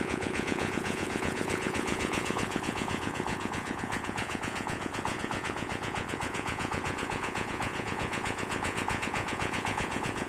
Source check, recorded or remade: remade